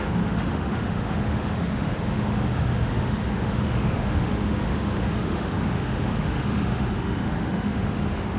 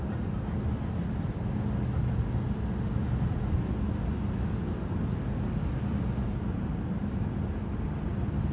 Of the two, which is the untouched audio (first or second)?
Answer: second